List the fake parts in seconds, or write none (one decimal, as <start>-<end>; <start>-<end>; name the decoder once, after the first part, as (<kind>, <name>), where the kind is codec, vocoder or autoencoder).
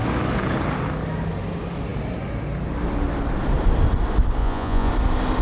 4.4-4.9 (vocoder, Vocos)